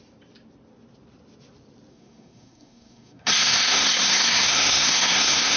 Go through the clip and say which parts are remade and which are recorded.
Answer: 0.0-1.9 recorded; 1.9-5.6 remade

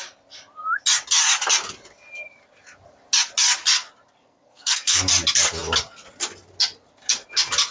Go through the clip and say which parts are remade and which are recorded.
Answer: 0.0-4.2 recorded; 4.2-5.1 remade; 5.1-7.7 recorded

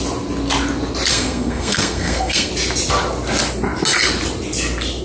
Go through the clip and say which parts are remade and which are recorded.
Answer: 0.0-1.1 recorded; 1.1-2.5 remade; 2.5-5.0 recorded

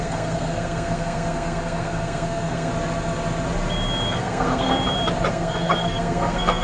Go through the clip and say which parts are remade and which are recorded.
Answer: 0.0-2.7 remade; 2.7-4.1 recorded; 4.1-4.7 remade; 4.7-5.3 recorded; 5.3-6.6 remade

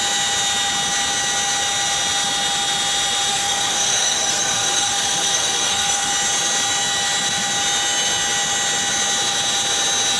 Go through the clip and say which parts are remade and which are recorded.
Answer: 0.0-3.3 recorded; 3.3-6.1 remade; 6.1-10.2 recorded